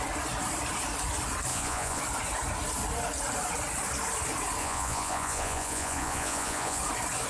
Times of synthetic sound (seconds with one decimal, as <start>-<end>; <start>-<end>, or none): 1.5-2.0; 4.6-6.8

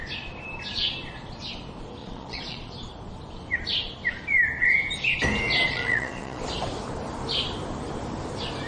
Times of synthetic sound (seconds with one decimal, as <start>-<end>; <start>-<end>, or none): 2.0-2.7; 5.7-6.4

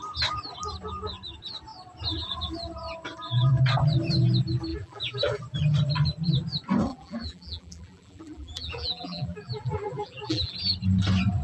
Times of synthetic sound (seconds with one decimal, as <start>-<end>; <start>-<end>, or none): 4.7-5.4; 6.9-10.5

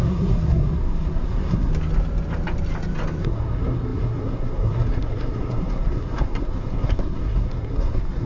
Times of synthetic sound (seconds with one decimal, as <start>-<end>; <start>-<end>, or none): 0.0-1.7; 3.2-8.3

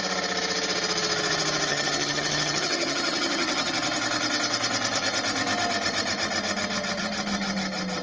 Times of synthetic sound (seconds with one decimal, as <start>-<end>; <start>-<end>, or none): 1.7-3.7

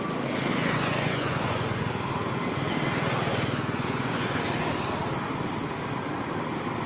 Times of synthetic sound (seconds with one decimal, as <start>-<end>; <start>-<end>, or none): 0.5-1.9; 3.3-4.4